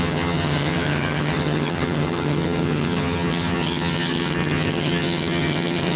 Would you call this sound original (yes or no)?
no